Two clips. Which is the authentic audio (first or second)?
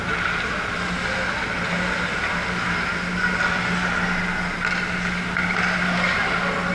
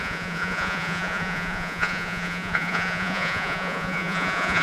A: first